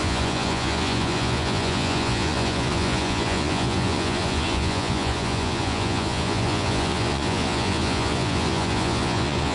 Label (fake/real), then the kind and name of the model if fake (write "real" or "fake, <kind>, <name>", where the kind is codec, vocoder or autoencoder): fake, vocoder, Vocos